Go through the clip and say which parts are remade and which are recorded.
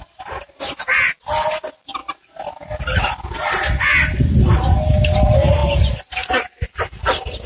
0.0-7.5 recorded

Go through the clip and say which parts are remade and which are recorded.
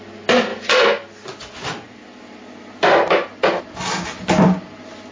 0.0-5.1 recorded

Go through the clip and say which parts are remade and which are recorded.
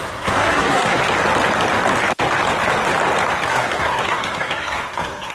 0.0-1.0 remade; 1.0-3.5 recorded; 3.5-5.3 remade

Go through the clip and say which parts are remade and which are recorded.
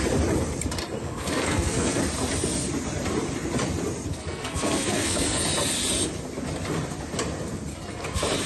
0.0-1.0 recorded; 1.0-2.0 remade; 2.0-4.1 recorded; 4.1-5.4 remade; 5.4-8.5 recorded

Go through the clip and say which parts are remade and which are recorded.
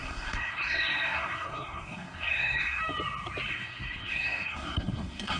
0.0-2.8 remade; 2.8-3.5 recorded; 3.5-5.4 remade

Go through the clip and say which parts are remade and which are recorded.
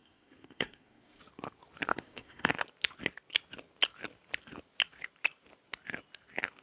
0.0-1.2 remade; 1.2-1.9 recorded; 1.9-2.5 remade; 2.5-6.6 recorded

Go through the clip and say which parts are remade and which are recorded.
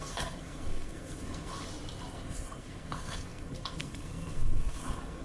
0.0-1.5 remade; 1.5-2.1 recorded; 2.1-5.2 remade